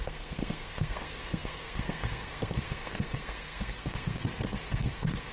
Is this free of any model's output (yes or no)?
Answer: no